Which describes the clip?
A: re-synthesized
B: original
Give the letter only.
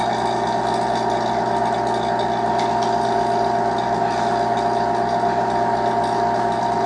B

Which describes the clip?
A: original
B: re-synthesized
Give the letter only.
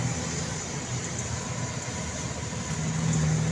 A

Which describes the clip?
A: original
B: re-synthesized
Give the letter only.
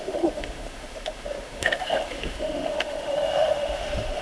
B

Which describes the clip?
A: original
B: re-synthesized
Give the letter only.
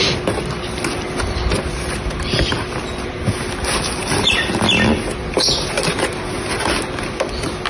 A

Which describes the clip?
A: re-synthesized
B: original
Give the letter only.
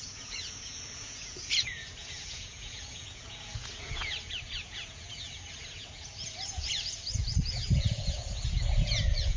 A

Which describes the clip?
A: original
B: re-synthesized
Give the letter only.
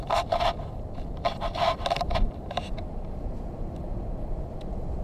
A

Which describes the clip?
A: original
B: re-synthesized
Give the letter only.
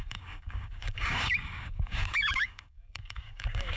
B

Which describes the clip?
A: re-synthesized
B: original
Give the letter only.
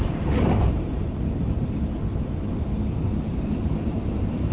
A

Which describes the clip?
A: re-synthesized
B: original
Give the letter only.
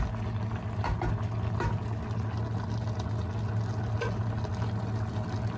B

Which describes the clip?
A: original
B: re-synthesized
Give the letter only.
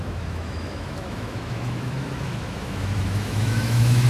B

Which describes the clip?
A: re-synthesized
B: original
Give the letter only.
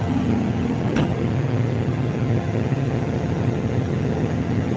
A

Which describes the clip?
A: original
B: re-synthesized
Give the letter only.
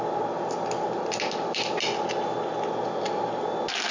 A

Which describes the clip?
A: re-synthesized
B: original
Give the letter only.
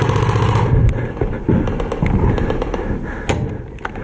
B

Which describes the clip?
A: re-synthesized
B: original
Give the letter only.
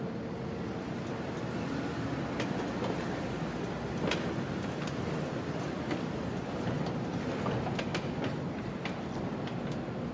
B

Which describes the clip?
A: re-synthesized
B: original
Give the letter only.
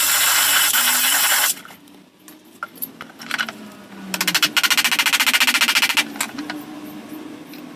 B